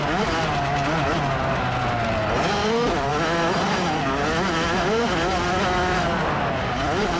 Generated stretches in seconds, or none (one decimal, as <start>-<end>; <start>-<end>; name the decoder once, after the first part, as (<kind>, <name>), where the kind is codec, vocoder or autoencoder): none